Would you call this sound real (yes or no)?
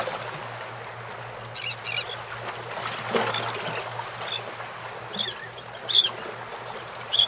yes